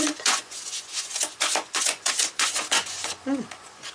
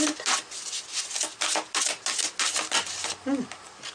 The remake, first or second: first